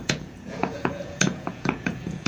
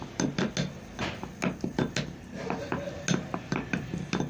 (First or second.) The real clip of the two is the second